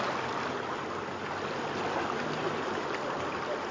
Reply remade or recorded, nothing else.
recorded